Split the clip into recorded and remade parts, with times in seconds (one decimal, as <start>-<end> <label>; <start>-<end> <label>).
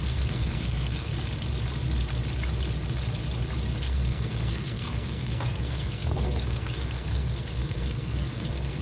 0.0-1.1 remade; 1.1-3.8 recorded; 3.8-8.8 remade